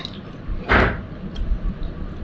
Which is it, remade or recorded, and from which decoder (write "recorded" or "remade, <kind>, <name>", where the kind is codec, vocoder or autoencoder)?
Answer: recorded